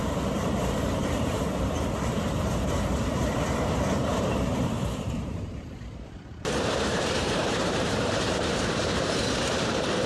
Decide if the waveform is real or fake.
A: fake